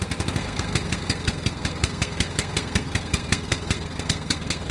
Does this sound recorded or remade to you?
remade